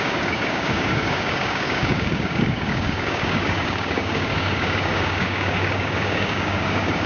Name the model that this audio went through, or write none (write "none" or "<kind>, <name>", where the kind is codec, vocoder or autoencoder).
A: codec, DAC